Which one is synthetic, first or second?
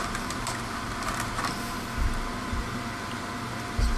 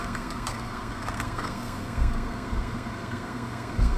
second